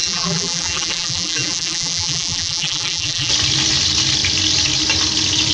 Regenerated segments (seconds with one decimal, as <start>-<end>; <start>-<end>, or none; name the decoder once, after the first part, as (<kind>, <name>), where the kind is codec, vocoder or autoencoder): 0.0-3.3 (vocoder, BigVGAN v2)

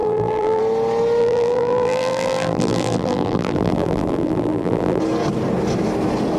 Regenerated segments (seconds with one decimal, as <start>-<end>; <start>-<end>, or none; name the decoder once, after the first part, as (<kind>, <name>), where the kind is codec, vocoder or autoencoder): 0.0-0.6 (vocoder, BigVGAN v2); 1.2-5.0

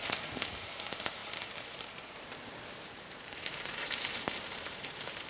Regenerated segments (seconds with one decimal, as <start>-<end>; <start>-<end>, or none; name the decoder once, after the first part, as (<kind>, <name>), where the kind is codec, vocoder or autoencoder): 0.0-5.3 (vocoder, BigVGAN v2)